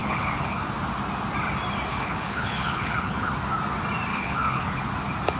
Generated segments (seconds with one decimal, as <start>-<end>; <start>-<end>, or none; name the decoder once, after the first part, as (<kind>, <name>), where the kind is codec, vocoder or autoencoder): 0.0-0.7 (codec, HILCodec); 1.9-3.3; 4.1-4.9